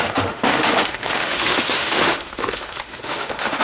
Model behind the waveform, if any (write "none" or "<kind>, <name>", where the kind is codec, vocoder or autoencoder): autoencoder, DAC-VAE